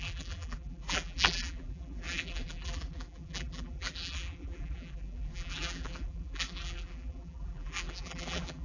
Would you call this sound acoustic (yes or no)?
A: no